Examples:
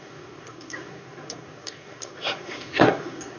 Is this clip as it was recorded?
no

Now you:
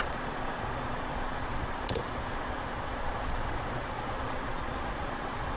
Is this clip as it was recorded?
no